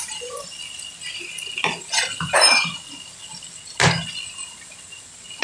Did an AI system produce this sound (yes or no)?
no